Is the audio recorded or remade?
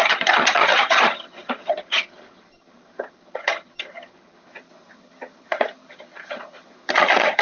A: remade